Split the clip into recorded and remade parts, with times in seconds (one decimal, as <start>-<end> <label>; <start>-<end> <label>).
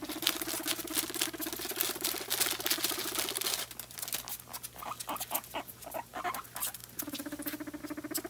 0.0-8.3 recorded